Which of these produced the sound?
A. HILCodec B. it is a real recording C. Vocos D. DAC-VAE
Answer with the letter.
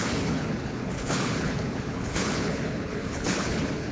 A